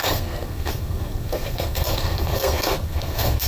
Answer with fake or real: fake